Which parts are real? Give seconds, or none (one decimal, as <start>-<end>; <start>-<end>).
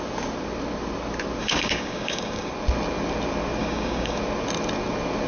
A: 0.0-1.4; 2.5-3.6; 4.2-5.3